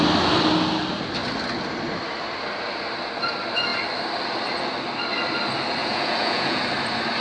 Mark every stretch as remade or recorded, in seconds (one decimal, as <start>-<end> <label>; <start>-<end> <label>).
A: 0.0-5.8 recorded; 5.8-6.6 remade; 6.6-7.2 recorded

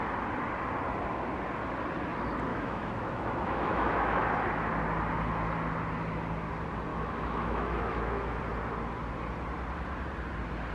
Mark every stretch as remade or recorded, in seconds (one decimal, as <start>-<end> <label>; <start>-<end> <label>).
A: 0.0-2.5 recorded; 2.5-4.2 remade; 4.2-6.9 recorded; 6.9-8.4 remade; 8.4-10.7 recorded

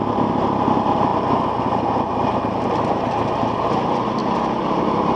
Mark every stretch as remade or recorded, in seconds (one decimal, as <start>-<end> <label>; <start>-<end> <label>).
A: 0.0-5.2 recorded